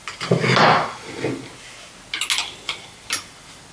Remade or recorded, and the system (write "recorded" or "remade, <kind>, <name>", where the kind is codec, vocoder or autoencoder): recorded